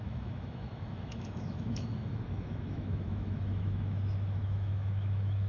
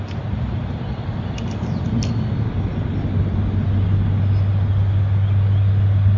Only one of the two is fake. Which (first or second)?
first